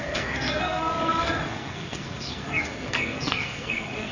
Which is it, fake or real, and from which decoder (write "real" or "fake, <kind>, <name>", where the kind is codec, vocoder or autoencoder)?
fake, codec, SNAC